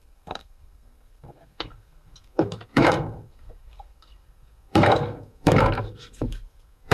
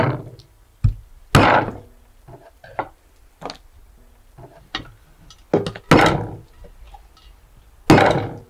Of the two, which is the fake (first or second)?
first